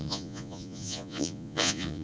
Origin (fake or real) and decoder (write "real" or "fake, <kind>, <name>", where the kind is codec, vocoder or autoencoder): fake, vocoder, Vocos